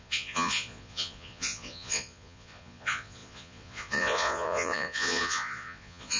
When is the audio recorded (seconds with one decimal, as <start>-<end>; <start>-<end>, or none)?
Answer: none

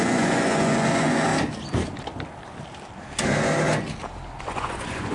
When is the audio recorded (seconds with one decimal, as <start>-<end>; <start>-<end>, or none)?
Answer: 1.3-4.4

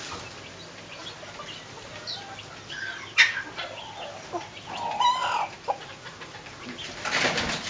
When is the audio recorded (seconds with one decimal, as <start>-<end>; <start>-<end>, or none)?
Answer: 0.0-7.7

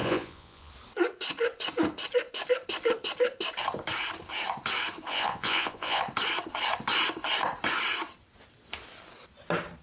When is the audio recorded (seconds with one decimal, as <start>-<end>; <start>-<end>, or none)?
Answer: 0.7-5.1; 6.0-9.8